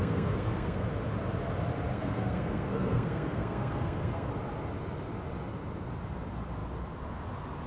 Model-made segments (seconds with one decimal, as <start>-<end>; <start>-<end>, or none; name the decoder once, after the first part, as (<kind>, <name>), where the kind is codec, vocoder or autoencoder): 0.0-0.9 (codec, SNAC); 1.9-4.3